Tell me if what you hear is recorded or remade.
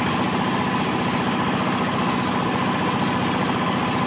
recorded